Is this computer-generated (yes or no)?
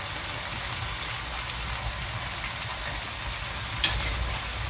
no